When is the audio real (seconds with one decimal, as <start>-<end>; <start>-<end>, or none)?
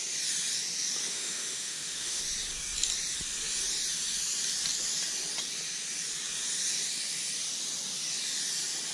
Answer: 0.0-1.1; 2.2-8.9